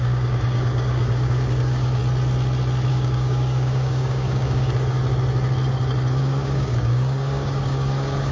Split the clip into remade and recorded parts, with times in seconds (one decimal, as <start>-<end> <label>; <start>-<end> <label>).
0.0-2.0 remade; 2.0-2.9 recorded; 2.9-5.0 remade; 5.0-6.2 recorded; 6.2-8.3 remade